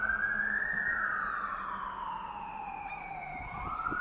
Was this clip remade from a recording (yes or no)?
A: no